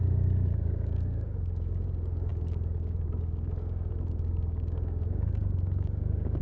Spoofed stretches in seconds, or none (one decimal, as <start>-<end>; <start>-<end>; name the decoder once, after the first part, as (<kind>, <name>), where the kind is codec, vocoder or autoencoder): 0.0-6.4 (codec, DAC)